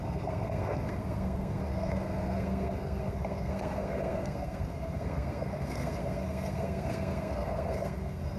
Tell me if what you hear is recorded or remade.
remade